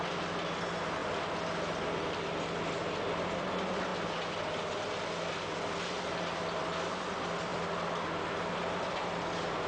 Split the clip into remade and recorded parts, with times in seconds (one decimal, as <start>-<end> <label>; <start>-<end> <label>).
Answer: 0.0-9.7 recorded